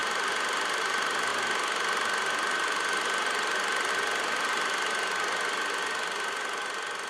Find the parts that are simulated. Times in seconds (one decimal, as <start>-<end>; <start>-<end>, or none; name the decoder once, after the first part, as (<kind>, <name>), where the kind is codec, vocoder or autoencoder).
none